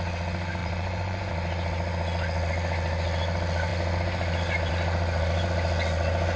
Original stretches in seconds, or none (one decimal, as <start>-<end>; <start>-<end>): 0.0-0.6; 1.3-6.4